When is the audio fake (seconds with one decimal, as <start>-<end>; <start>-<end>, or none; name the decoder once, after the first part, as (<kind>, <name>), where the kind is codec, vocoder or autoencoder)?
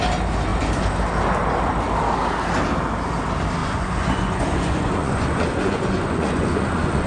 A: 3.6-7.1 (vocoder, Vocos)